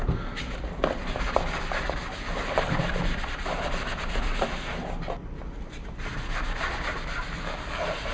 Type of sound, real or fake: real